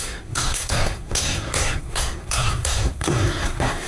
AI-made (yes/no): yes